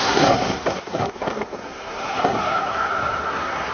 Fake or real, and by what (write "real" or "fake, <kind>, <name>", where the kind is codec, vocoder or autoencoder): fake, codec, SNAC